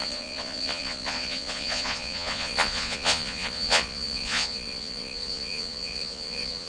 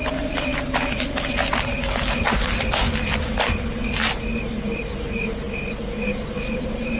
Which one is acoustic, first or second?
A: second